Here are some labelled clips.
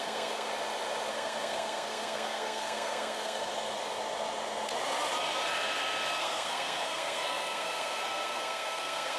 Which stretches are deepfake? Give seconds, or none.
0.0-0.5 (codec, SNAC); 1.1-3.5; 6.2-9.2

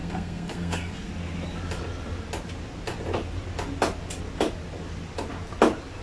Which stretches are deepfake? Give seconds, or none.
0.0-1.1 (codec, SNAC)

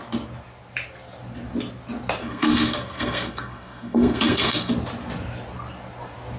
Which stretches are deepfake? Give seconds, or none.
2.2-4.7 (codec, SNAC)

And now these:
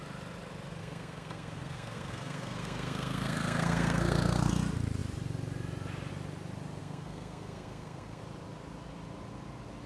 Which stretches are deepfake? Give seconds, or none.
0.8-4.5 (codec, SNAC); 6.8-8.2

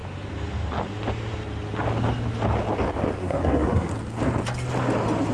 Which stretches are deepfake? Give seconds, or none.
3.2-3.9 (codec, SNAC)